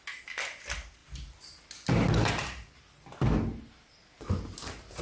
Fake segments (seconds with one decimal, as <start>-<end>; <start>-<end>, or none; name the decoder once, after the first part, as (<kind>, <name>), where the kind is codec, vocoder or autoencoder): none